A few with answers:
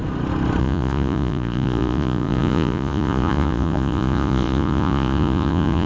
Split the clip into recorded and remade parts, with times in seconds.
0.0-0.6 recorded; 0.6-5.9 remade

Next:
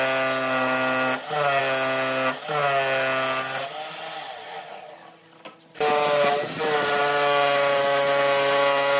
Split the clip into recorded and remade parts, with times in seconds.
0.0-9.0 recorded

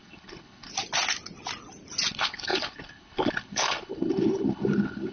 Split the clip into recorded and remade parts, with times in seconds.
0.0-0.7 remade; 0.7-2.1 recorded; 2.1-5.1 remade

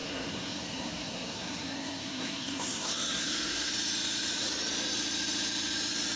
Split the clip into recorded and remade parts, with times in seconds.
0.0-3.7 remade; 3.7-6.2 recorded